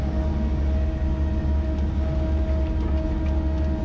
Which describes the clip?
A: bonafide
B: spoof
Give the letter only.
A